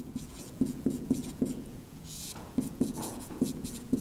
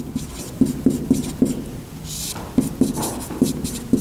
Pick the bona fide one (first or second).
second